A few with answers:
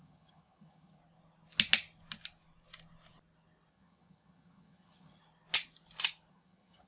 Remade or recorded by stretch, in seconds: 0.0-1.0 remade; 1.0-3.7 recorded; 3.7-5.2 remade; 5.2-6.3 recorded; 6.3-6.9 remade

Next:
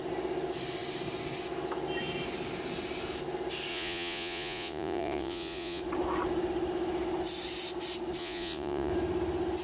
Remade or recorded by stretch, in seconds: 0.0-3.7 recorded; 3.7-5.8 remade; 5.8-8.2 recorded; 8.2-8.9 remade; 8.9-9.6 recorded

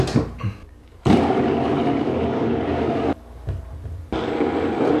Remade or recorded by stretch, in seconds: 0.0-0.6 recorded; 0.6-3.6 remade; 3.6-5.0 recorded

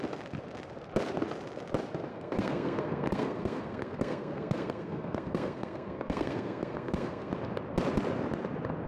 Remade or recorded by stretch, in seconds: 0.0-2.1 recorded; 2.1-7.3 remade; 7.3-8.9 recorded